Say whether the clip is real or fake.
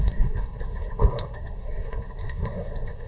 fake